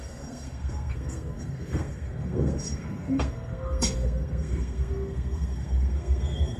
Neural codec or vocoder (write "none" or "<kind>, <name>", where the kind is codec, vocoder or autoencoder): codec, SNAC